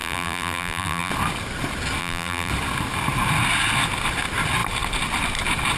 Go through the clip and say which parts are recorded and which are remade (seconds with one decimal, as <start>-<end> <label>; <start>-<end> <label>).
0.0-1.1 remade; 1.1-2.0 recorded; 2.0-2.5 remade; 2.5-5.8 recorded